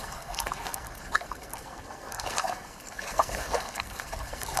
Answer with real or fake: fake